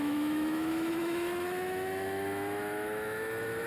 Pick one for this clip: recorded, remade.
remade